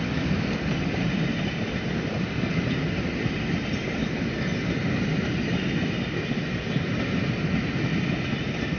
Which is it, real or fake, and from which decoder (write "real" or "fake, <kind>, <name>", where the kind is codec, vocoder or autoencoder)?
real